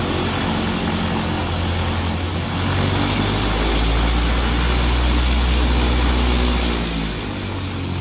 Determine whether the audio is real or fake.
real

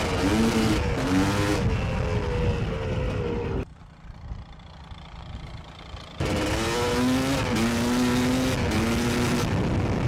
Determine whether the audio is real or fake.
real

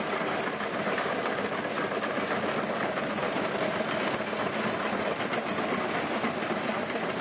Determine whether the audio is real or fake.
real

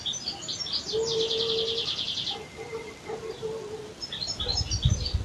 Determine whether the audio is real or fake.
fake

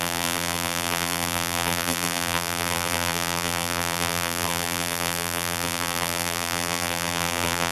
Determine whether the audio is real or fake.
fake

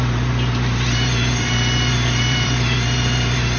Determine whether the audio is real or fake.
fake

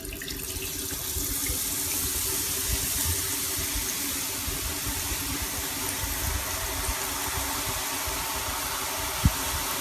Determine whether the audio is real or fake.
real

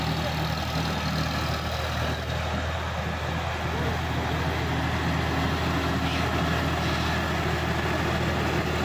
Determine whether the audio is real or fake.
real